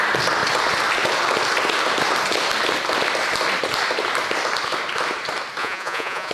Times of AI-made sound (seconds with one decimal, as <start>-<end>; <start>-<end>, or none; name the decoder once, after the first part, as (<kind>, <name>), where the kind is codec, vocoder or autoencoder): 5.6-6.3 (vocoder, Vocos)